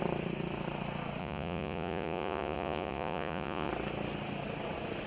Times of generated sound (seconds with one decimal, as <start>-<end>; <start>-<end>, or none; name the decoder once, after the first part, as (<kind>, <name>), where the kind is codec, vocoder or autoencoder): 1.2-3.7 (vocoder, Vocos)